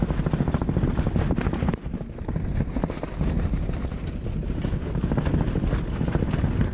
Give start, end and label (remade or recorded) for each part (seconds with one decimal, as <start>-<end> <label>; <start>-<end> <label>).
0.0-6.7 recorded